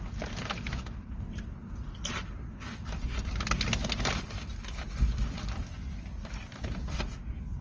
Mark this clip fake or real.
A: real